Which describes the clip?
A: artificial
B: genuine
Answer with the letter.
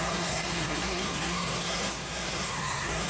A